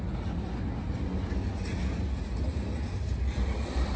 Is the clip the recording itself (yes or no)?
yes